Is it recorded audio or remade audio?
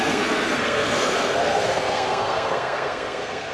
remade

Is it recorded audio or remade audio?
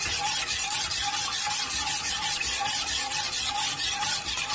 recorded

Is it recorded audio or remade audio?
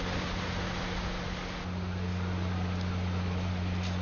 recorded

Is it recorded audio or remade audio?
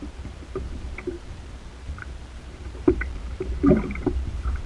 remade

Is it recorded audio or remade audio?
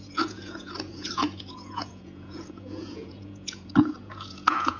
remade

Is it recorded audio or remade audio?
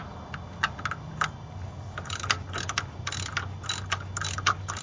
recorded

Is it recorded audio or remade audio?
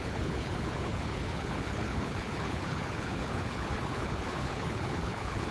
remade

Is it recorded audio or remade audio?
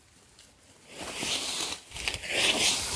recorded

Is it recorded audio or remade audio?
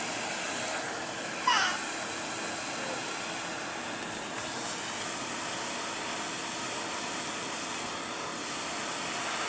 recorded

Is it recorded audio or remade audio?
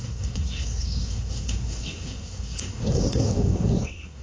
remade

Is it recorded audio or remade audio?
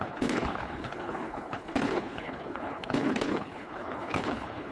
remade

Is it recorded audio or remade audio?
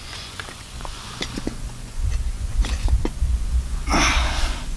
remade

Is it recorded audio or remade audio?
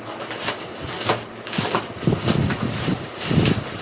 recorded